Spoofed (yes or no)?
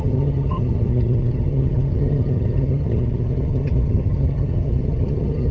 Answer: yes